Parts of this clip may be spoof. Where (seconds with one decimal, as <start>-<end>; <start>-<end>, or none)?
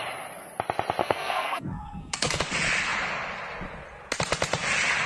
1.0-2.4